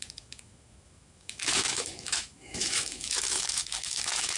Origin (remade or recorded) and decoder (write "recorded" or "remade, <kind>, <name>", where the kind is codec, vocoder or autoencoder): remade, autoencoder, DAC-VAE